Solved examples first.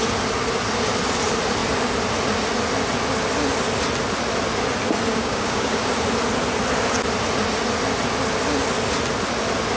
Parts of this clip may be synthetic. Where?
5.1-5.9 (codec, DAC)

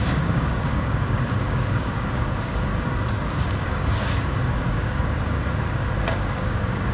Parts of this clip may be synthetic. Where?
0.0-2.7 (codec, DAC); 3.2-6.9

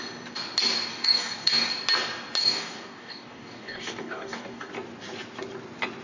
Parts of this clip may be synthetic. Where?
0.9-1.7 (codec, DAC); 2.4-4.7

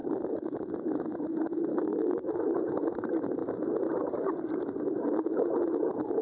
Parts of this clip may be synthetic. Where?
0.0-0.7 (codec, DAC); 1.7-2.3

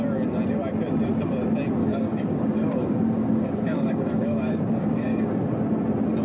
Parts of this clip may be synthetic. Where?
1.8-5.5 (codec, DAC)